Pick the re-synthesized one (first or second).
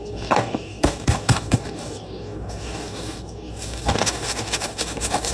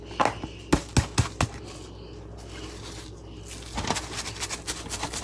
first